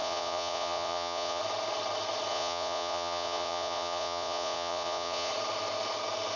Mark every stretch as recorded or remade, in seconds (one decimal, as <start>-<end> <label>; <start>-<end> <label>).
0.0-1.4 remade; 1.4-2.3 recorded; 2.3-5.3 remade; 5.3-6.4 recorded

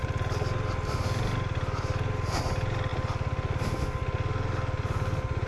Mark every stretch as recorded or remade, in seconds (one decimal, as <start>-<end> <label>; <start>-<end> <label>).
0.0-5.5 recorded

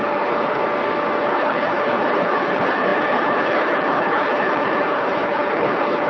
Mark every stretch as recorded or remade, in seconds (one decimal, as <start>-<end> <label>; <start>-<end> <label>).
0.0-0.6 remade; 0.6-1.2 recorded; 1.2-6.1 remade

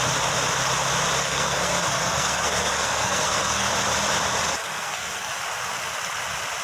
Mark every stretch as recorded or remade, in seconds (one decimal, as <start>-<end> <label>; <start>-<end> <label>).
0.0-1.2 recorded; 1.2-3.7 remade; 3.7-4.5 recorded; 4.5-5.4 remade; 5.4-6.6 recorded

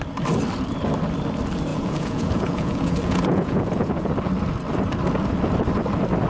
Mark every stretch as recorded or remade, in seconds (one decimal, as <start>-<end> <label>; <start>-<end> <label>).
0.0-1.7 recorded; 1.7-4.1 remade; 4.1-6.3 recorded